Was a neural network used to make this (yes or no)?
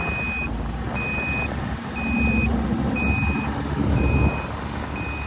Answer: no